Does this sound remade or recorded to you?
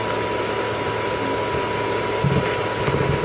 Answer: recorded